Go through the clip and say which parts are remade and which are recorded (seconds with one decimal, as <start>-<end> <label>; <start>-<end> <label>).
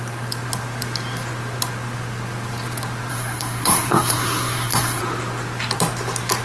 0.0-3.1 recorded; 3.1-5.0 remade; 5.0-6.4 recorded